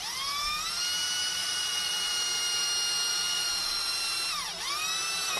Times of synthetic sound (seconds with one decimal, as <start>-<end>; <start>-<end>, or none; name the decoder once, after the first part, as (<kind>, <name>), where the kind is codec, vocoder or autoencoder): 1.3-2.1 (vocoder, Vocos); 3.1-3.9